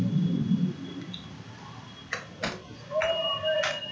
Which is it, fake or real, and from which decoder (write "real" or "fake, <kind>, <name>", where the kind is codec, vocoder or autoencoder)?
real